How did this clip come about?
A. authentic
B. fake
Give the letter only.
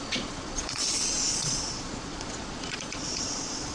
B